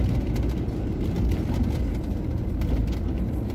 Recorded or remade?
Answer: recorded